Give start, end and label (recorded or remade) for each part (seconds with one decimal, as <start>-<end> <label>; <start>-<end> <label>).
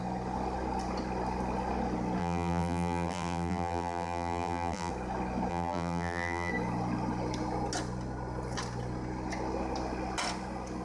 0.0-2.2 recorded; 2.2-4.9 remade; 4.9-5.5 recorded; 5.5-6.5 remade; 6.5-10.8 recorded